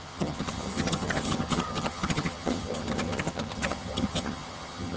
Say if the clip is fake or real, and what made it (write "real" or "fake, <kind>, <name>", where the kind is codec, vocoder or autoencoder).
fake, vocoder, HiFi-GAN